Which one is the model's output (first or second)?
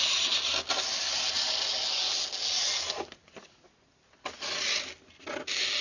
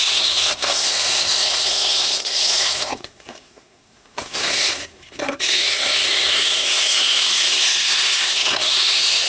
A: second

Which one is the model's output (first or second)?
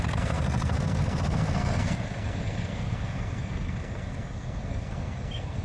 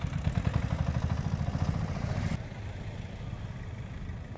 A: first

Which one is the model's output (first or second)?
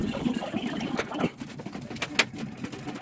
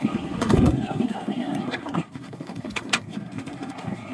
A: second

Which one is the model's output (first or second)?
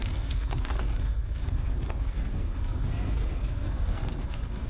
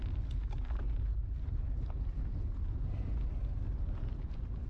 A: first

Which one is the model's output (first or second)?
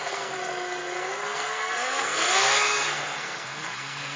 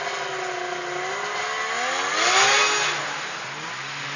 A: first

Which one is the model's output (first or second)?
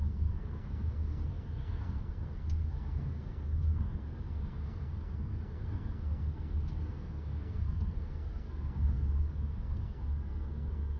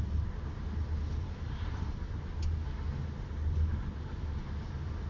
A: first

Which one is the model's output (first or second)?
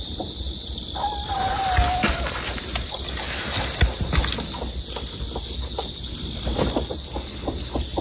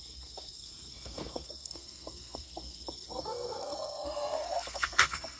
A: second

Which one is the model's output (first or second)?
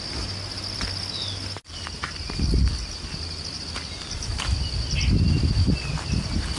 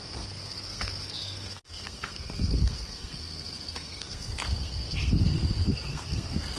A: second